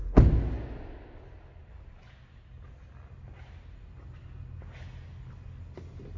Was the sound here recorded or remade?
recorded